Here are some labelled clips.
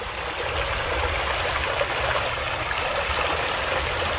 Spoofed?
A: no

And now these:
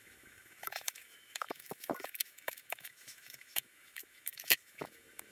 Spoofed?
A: yes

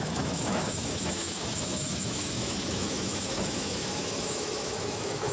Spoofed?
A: yes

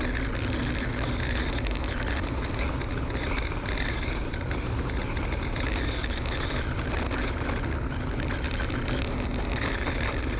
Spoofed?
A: no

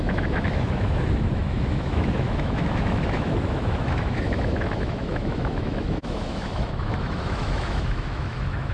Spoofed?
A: yes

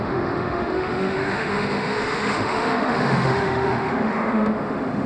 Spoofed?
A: yes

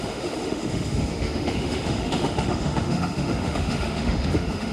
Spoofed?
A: yes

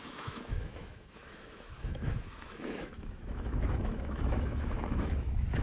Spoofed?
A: yes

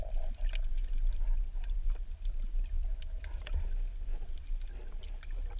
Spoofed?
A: no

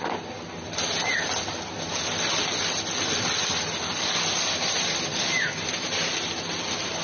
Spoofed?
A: no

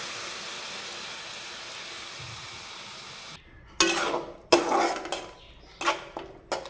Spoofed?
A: no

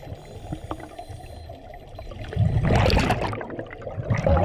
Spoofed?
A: no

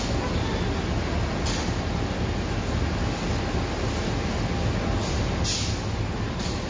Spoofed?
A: no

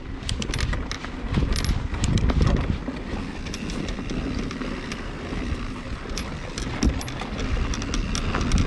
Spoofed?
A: no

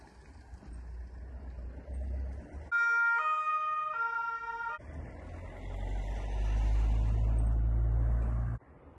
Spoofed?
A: no